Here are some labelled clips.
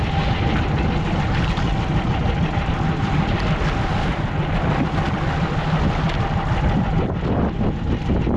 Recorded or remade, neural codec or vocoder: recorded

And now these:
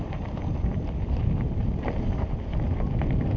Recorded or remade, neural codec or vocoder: recorded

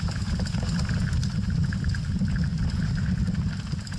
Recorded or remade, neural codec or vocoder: recorded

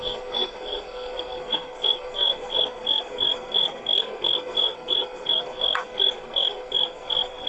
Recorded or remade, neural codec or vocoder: remade, codec, SNAC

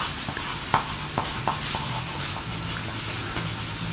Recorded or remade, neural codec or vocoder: recorded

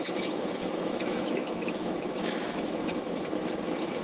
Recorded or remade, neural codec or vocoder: remade, autoencoder, DAC-VAE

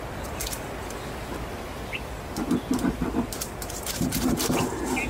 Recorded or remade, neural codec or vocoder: recorded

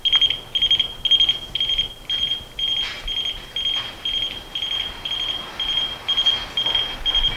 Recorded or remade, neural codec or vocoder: recorded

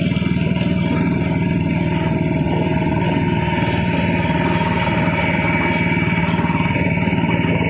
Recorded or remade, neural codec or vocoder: recorded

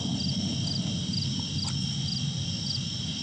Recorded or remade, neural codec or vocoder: recorded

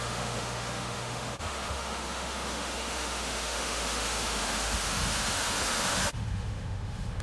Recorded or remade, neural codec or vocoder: remade, autoencoder, DAC-VAE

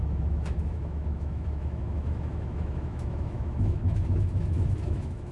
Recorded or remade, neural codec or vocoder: remade, autoencoder, DAC-VAE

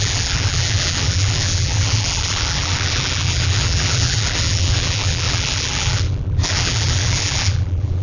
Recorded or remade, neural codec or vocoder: remade, vocoder, BigVGAN v2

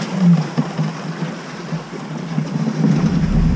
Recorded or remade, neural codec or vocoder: recorded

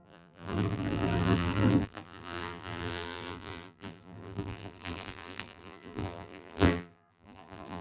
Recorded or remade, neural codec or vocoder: remade, vocoder, BigVGAN v2